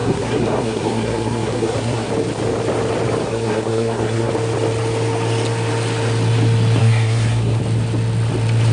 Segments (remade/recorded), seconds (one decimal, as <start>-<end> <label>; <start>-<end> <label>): 0.0-2.1 remade; 2.1-3.2 recorded; 3.2-4.3 remade; 4.3-6.8 recorded; 6.8-7.6 remade; 7.6-8.7 recorded